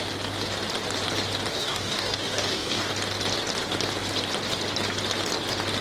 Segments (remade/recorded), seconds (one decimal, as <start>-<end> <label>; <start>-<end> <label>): 0.0-1.5 recorded; 1.5-2.9 remade; 2.9-5.8 recorded